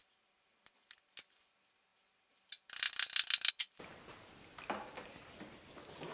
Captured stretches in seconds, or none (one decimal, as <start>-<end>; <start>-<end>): 0.0-6.1